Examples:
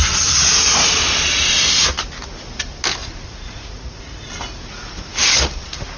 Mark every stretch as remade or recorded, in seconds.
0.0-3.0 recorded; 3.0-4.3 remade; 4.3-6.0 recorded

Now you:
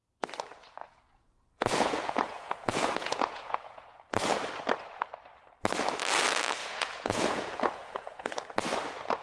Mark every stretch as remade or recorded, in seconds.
0.0-0.8 recorded; 0.8-4.0 remade; 4.0-6.6 recorded; 6.6-8.3 remade; 8.3-9.2 recorded